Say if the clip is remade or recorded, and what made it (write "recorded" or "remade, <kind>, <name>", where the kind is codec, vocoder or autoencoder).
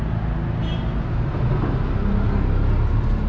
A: recorded